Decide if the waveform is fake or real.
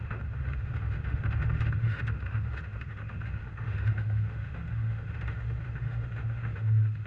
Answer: fake